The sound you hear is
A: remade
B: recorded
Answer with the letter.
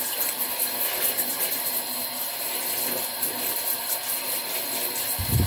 B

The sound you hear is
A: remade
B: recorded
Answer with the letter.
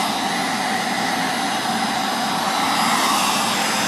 B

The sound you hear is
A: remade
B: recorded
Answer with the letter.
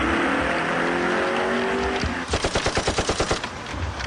B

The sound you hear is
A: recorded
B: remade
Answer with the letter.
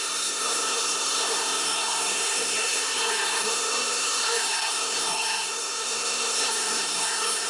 B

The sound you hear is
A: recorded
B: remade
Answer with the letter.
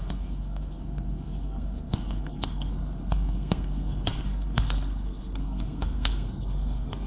B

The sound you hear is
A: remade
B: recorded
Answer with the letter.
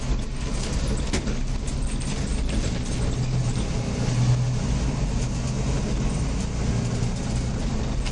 B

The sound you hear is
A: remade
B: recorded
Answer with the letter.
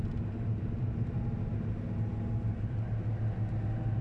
B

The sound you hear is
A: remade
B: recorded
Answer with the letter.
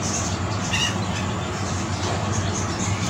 B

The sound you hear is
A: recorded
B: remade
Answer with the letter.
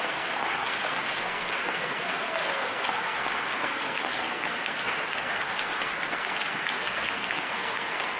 B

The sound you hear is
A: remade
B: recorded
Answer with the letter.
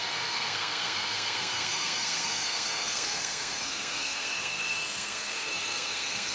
A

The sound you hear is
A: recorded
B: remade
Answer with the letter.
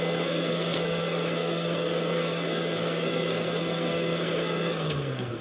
B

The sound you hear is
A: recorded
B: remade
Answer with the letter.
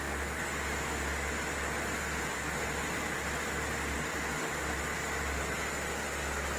A